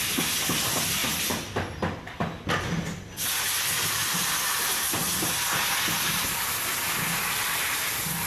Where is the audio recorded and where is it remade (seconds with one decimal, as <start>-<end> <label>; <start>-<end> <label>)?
0.0-8.3 recorded